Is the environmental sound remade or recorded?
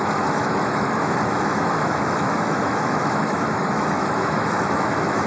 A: remade